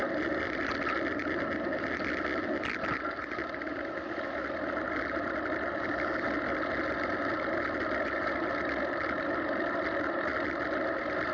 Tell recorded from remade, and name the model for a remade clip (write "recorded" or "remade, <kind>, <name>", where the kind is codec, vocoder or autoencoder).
recorded